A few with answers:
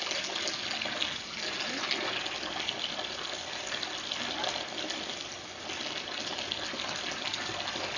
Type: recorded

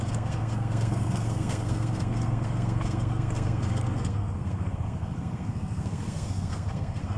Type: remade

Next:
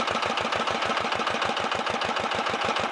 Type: recorded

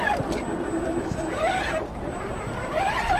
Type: recorded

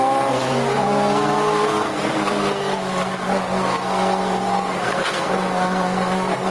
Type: remade